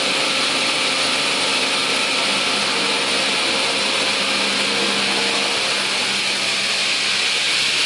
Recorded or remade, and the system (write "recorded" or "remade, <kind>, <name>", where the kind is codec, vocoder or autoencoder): recorded